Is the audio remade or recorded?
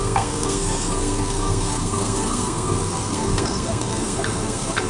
remade